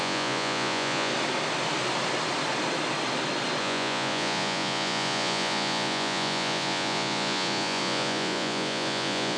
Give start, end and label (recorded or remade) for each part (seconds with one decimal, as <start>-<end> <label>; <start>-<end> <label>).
0.0-1.1 remade; 1.1-3.6 recorded; 3.6-9.4 remade